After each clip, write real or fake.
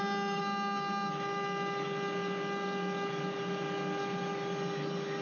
real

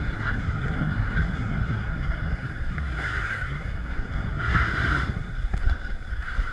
fake